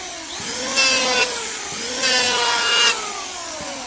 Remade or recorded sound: recorded